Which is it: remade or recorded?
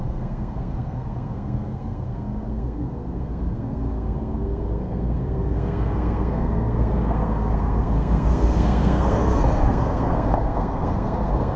remade